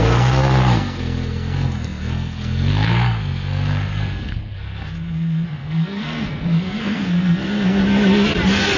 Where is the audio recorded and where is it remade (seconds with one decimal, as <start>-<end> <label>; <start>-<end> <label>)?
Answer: 0.0-7.8 remade; 7.8-8.8 recorded